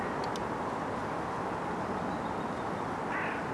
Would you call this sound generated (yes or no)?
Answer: no